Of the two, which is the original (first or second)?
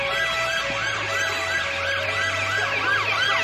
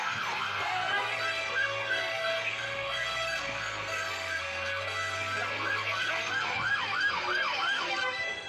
first